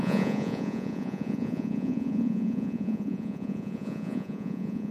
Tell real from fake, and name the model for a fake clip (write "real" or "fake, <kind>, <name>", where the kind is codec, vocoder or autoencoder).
fake, vocoder, Vocos